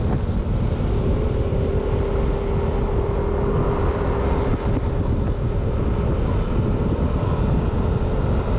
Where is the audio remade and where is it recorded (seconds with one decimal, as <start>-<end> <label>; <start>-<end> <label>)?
0.0-8.6 recorded